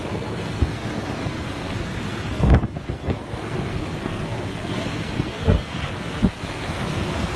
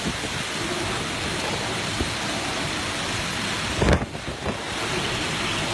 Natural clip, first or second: second